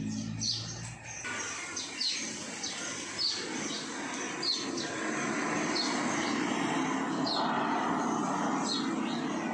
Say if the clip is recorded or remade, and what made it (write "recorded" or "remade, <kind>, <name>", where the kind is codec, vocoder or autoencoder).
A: recorded